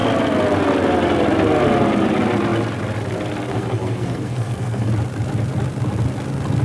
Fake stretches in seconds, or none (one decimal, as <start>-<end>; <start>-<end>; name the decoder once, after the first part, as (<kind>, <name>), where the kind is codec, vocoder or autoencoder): 3.5-4.9 (codec, SNAC)